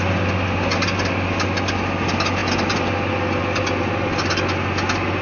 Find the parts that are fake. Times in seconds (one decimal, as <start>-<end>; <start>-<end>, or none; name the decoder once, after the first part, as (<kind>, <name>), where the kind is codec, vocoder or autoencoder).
none